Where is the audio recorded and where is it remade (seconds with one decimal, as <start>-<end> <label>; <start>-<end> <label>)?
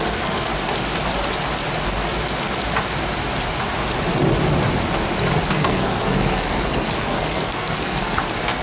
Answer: 0.0-0.5 remade; 0.5-5.5 recorded; 5.5-8.6 remade